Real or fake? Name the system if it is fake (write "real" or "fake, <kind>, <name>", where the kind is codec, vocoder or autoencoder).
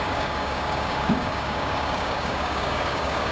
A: fake, codec, DAC